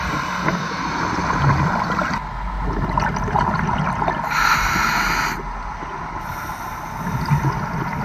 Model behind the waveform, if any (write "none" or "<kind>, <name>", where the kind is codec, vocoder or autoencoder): none